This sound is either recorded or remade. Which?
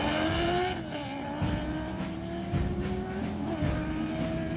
remade